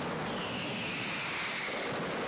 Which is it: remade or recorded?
recorded